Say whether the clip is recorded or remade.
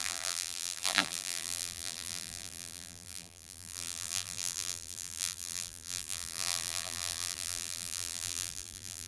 remade